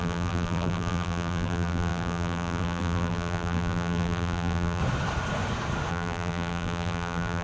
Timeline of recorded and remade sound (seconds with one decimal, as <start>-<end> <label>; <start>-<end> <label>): 0.0-4.8 remade; 4.8-5.9 recorded; 5.9-7.4 remade